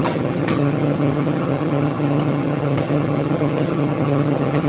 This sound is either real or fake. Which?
fake